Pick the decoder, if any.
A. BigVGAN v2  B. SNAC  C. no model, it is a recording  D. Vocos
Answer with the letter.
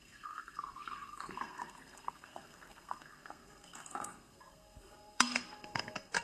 B